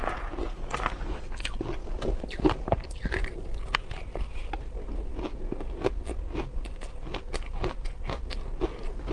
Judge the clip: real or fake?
real